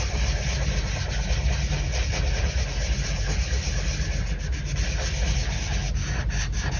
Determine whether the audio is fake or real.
real